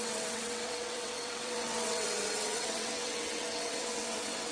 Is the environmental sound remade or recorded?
remade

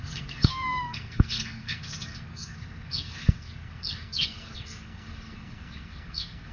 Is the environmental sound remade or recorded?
remade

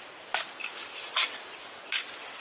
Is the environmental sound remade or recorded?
recorded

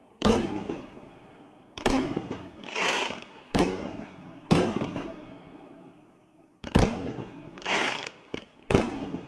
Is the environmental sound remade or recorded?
remade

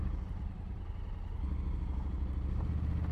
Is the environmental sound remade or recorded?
recorded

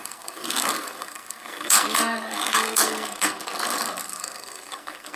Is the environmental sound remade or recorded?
remade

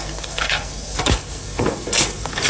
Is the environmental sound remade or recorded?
remade